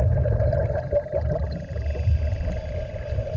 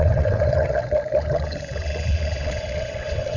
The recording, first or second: first